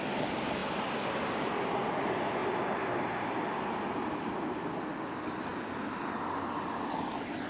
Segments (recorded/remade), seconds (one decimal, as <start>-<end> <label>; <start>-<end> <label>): 0.0-7.5 recorded